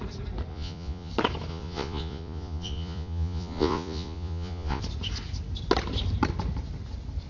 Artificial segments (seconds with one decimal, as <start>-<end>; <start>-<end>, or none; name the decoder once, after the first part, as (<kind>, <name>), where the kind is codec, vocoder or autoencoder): 0.5-1.1 (vocoder, Vocos); 1.5-4.8